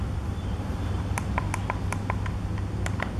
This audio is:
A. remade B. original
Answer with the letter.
B